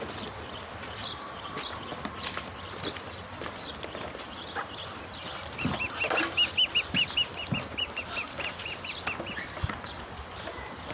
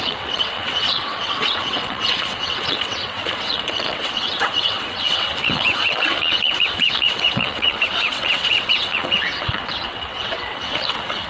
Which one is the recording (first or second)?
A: first